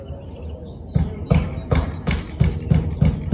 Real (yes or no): yes